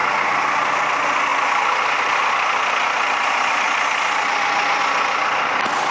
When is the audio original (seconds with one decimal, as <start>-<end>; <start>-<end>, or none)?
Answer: 0.0-5.9